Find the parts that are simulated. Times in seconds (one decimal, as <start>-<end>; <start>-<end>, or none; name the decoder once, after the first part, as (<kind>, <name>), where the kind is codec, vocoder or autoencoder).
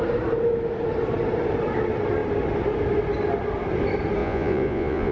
4.2-5.1 (vocoder, Vocos)